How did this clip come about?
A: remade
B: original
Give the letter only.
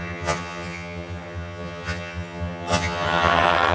A